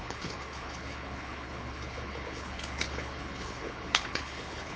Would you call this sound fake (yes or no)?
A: yes